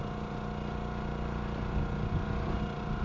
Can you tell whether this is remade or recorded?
recorded